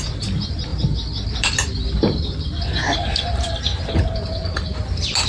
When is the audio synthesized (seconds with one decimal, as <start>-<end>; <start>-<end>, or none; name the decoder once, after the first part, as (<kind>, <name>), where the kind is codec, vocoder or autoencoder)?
none